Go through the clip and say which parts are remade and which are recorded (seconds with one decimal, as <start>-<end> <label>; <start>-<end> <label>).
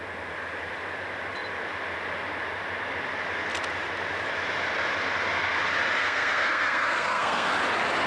0.0-6.0 recorded; 6.0-7.5 remade; 7.5-8.1 recorded